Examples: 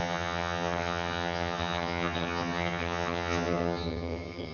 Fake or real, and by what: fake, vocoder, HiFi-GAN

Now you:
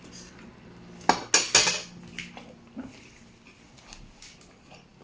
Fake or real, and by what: real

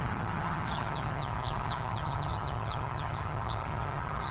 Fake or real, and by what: fake, vocoder, HiFi-GAN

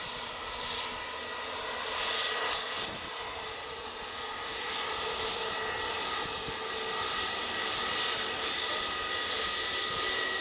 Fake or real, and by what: real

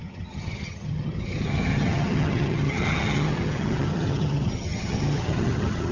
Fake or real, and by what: fake, vocoder, HiFi-GAN